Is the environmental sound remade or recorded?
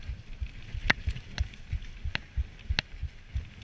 recorded